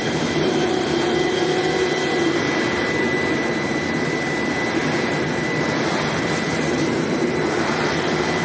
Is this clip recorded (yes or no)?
no